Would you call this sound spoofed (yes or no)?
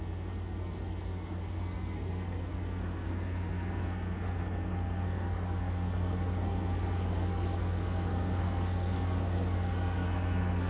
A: yes